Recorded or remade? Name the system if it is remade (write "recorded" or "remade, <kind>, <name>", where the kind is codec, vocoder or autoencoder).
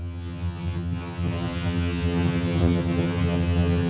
remade, vocoder, HiFi-GAN